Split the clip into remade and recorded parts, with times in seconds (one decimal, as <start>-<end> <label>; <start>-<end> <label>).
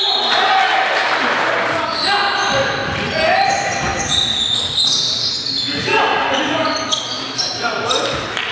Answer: 0.0-8.5 recorded